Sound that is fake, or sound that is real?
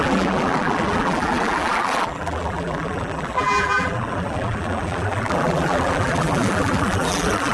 fake